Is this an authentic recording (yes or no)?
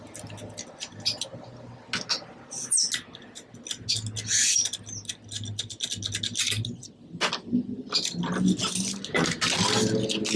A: yes